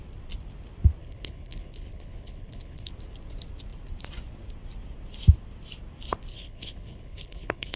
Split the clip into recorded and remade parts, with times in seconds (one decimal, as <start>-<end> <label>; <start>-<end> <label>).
0.0-1.0 recorded; 1.0-2.9 remade; 2.9-6.3 recorded; 6.3-7.8 remade

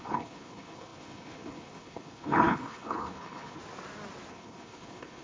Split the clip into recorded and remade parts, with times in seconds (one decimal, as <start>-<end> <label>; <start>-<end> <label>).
0.0-3.6 remade; 3.6-4.3 recorded; 4.3-5.2 remade